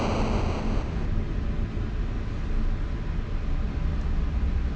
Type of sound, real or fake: real